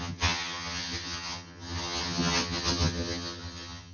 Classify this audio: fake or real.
fake